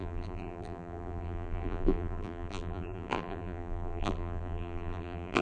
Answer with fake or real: fake